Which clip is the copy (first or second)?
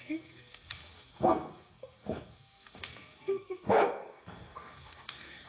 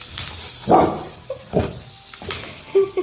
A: first